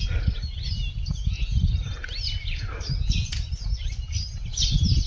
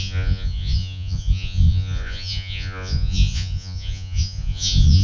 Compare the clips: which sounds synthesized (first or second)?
second